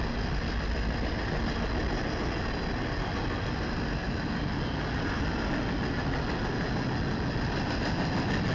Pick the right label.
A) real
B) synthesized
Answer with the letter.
A